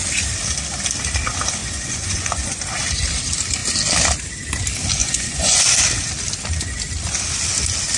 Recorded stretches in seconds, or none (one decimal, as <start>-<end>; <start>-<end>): 0.0-1.6; 2.6-5.0; 5.6-8.0